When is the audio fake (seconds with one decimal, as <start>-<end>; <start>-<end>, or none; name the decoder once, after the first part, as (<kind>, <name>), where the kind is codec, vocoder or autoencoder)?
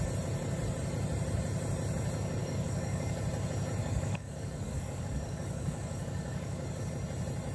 2.4-3.2 (codec, DAC); 3.8-6.9